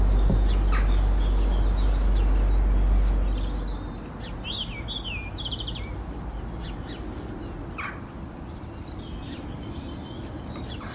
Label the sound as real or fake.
real